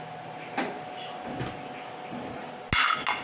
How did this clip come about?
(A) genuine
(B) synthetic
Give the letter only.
A